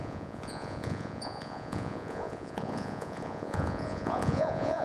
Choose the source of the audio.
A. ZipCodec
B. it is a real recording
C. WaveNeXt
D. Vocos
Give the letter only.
D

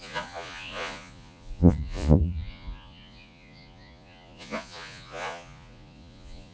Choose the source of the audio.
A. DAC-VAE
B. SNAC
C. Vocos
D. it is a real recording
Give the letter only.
C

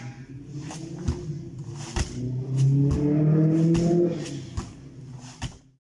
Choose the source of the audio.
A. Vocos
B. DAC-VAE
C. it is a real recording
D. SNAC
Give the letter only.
C